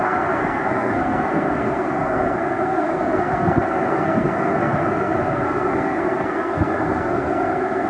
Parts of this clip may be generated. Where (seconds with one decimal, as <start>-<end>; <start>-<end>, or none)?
0.0-7.9